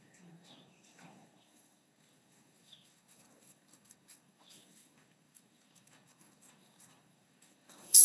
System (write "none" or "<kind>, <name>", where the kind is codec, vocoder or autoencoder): codec, SNAC